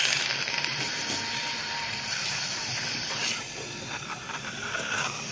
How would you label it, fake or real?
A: fake